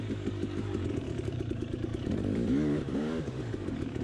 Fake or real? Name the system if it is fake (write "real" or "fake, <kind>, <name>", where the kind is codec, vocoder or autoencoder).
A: fake, codec, DAC